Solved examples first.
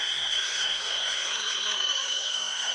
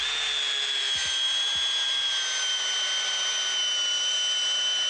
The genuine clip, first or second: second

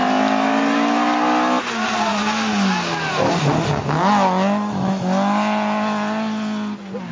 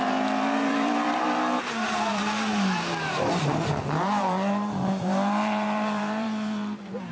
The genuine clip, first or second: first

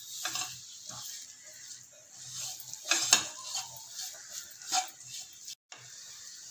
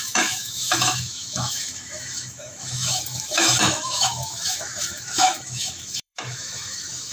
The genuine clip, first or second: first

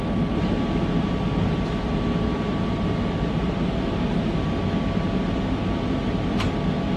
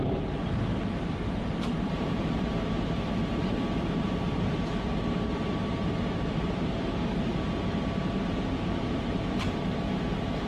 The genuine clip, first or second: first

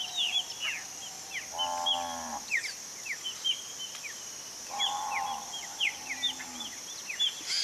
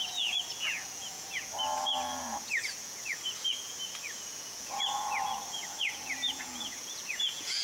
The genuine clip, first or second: first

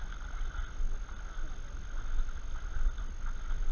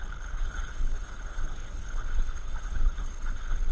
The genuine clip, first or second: first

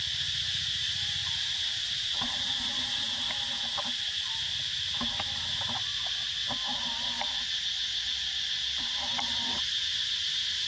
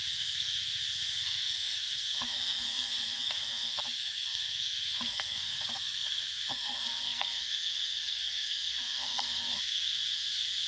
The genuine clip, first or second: first